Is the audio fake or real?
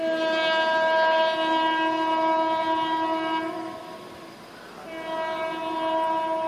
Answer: real